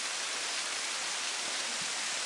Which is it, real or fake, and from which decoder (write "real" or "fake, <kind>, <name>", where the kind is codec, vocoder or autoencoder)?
real